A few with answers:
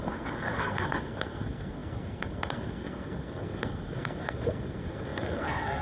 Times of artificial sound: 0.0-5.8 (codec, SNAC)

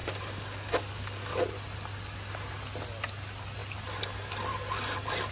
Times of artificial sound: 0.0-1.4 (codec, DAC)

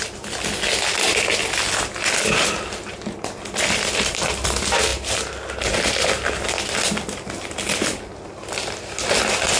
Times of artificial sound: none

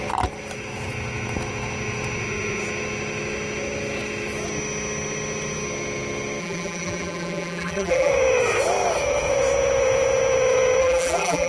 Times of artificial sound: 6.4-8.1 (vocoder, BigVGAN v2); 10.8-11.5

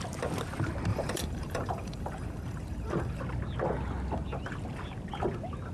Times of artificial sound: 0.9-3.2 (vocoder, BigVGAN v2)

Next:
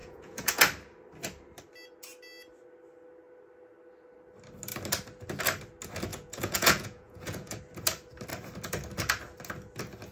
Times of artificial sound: 0.0-0.6 (vocoder, Vocos); 6.1-7.6